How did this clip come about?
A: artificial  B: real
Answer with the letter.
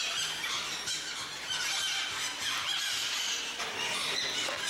B